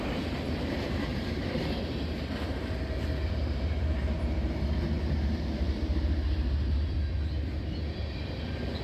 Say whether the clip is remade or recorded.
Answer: remade